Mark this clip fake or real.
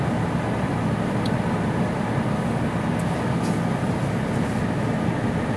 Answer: real